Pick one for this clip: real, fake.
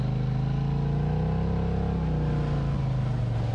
real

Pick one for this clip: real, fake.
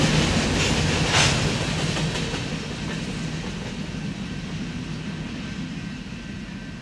real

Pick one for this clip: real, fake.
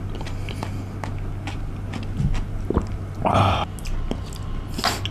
real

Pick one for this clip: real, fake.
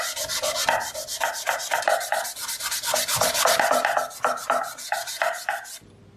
real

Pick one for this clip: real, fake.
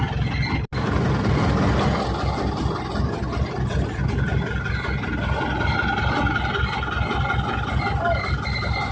real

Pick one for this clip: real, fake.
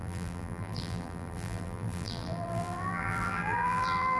fake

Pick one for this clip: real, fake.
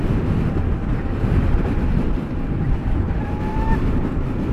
real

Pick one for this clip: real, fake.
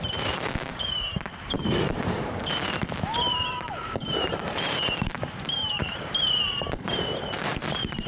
fake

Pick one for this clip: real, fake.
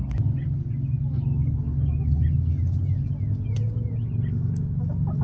real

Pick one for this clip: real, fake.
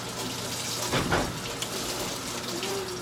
real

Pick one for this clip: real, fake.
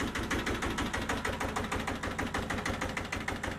real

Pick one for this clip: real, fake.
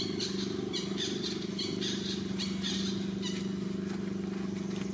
real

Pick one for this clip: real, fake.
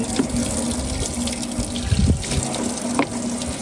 real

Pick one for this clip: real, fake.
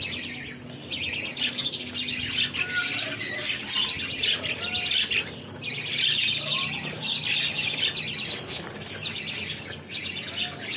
real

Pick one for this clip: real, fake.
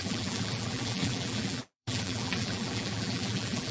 fake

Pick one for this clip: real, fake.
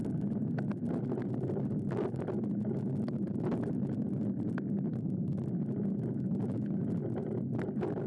real